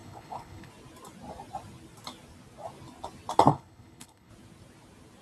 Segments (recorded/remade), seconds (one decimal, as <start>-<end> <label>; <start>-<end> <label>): 0.0-0.7 remade; 0.7-3.5 recorded; 3.5-4.3 remade; 4.3-5.2 recorded